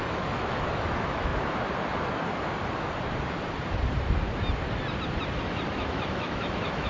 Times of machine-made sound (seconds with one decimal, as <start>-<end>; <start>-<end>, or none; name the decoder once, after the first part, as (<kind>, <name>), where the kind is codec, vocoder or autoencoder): 0.0-1.3 (autoencoder, DAC-VAE); 5.4-6.9